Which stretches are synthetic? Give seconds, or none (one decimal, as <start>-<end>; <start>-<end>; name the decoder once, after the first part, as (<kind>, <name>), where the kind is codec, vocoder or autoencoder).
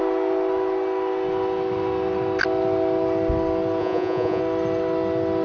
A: 3.8-4.4 (vocoder, Vocos)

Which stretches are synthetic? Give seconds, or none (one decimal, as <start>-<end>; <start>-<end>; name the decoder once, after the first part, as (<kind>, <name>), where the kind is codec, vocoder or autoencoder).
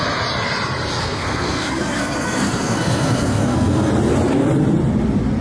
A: 1.0-3.9 (codec, SNAC)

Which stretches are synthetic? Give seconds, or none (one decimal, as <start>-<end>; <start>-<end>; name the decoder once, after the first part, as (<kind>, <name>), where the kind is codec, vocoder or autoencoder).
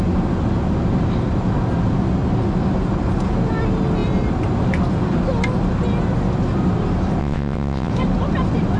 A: 7.2-7.9 (vocoder, WaveNeXt)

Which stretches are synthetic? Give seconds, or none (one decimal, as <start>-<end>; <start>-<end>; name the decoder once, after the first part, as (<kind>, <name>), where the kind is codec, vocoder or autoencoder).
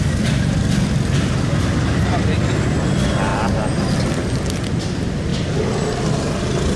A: none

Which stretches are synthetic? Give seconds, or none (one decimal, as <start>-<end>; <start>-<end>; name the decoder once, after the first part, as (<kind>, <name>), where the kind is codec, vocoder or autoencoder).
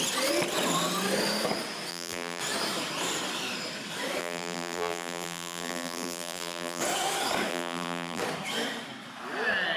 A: 1.9-2.4 (vocoder, BigVGAN v2); 4.2-6.8; 7.5-8.2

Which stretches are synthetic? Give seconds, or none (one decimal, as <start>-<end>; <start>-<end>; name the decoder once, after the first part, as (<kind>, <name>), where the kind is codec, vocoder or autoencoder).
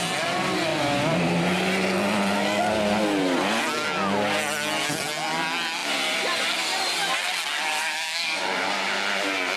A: 7.8-8.4 (codec, DAC)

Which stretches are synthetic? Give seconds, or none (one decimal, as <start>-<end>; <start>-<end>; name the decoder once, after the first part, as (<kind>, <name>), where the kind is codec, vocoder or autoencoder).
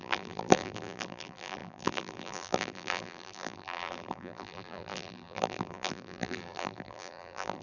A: 0.0-7.6 (vocoder, BigVGAN v2)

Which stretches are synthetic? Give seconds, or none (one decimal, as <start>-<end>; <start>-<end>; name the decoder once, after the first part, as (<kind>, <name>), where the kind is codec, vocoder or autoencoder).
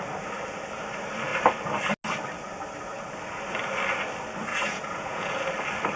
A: 4.5-5.5 (vocoder, Vocos)